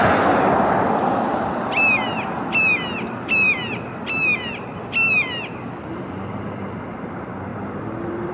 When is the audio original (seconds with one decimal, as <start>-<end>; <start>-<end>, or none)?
0.0-7.5